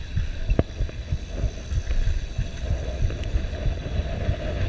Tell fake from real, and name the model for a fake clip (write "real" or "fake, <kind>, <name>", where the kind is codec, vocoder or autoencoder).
real